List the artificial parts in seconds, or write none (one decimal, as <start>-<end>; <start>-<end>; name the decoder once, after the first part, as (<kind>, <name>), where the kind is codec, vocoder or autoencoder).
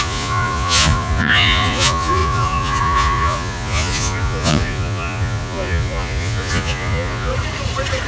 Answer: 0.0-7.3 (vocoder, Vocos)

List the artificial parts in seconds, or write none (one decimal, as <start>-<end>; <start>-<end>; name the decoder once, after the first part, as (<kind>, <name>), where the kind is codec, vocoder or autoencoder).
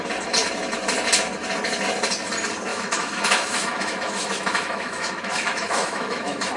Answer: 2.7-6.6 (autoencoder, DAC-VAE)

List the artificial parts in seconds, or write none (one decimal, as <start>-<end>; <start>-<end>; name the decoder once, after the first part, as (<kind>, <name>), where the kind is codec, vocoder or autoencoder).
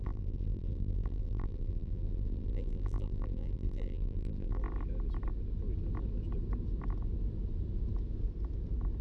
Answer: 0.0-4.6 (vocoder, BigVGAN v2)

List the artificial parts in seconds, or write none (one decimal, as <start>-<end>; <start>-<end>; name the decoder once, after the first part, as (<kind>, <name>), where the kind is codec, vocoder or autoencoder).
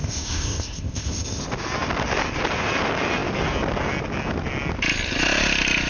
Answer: 0.0-1.4 (codec, ZipCodec)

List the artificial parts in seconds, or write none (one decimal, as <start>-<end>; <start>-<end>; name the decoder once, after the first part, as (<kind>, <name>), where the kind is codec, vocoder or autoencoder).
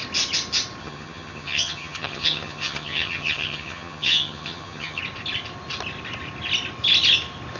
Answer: 0.8-5.0 (vocoder, HiFi-GAN)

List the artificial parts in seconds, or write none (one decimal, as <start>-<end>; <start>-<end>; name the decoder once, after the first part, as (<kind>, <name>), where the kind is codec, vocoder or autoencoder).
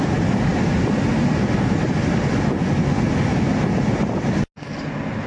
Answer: none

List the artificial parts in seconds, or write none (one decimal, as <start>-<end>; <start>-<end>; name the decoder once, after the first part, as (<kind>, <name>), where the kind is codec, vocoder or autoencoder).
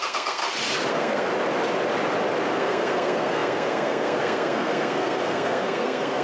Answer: 0.0-0.4 (codec, SNAC); 0.9-1.3; 2.6-6.2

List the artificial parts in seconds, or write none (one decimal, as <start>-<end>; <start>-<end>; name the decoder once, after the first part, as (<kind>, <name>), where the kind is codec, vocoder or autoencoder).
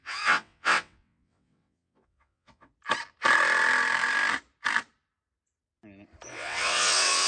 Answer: 0.0-2.7 (vocoder, WaveNeXt); 6.3-7.3